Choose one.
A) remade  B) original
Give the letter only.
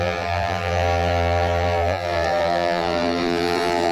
A